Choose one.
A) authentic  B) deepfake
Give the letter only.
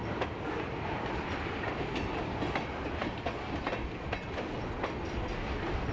A